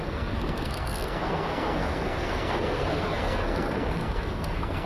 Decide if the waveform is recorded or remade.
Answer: remade